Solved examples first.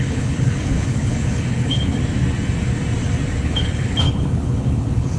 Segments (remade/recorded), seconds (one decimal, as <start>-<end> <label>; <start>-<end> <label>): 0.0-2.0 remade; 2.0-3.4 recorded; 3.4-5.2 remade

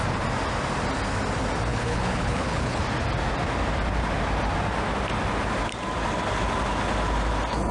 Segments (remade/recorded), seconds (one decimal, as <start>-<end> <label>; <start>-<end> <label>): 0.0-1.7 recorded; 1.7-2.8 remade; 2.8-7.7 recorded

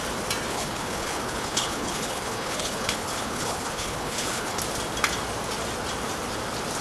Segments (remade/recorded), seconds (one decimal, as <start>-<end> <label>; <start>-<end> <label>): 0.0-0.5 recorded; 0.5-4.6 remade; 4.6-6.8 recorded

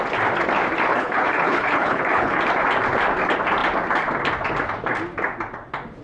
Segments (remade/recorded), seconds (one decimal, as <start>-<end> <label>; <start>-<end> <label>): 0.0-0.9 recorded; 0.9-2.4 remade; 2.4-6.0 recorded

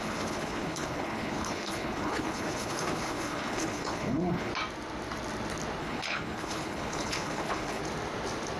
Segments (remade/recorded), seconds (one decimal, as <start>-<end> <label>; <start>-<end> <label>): 0.0-4.5 remade; 4.5-5.8 recorded; 5.8-7.8 remade; 7.8-8.6 recorded